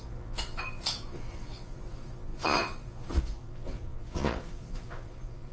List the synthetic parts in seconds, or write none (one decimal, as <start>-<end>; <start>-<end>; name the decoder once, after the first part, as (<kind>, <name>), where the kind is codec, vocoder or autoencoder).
0.0-5.5 (vocoder, Vocos)

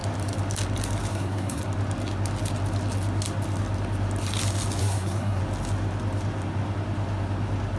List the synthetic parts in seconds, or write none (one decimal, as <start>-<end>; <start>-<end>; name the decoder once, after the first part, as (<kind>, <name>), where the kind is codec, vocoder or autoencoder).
1.1-1.6 (codec, SNAC); 4.8-5.4

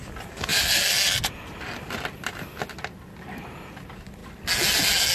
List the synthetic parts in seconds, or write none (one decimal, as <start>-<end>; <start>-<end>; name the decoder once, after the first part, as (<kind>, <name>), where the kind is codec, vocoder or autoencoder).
none

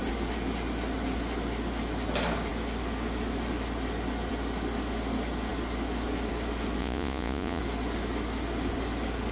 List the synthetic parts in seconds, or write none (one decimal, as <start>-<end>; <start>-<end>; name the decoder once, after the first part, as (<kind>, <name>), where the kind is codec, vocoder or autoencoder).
6.8-7.6 (vocoder, Vocos)